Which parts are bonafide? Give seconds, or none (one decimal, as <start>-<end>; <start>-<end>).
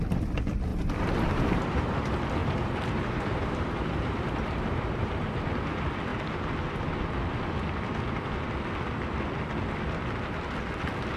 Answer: 0.0-0.7; 2.0-2.4; 5.1-11.2